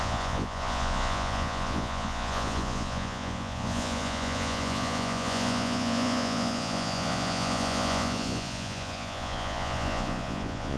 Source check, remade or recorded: remade